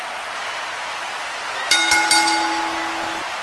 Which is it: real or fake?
real